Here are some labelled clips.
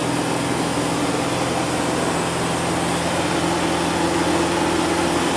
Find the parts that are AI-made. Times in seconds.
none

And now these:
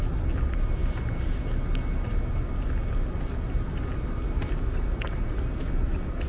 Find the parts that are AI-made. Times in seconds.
none